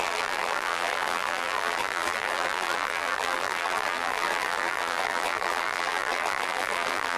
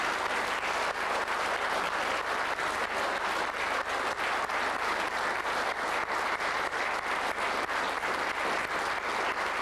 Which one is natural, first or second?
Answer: second